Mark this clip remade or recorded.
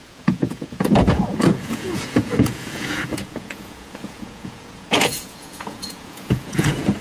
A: remade